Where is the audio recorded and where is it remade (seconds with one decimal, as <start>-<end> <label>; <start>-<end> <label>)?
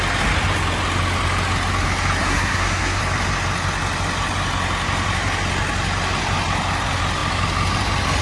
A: 0.0-2.2 recorded; 2.2-3.0 remade; 3.0-8.2 recorded